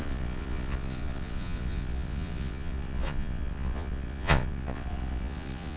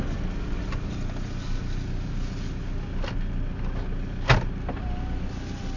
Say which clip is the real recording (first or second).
second